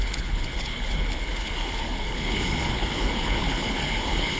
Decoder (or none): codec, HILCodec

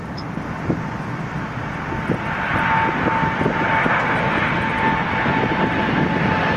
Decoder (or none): none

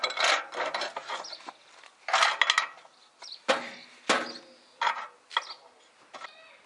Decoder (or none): none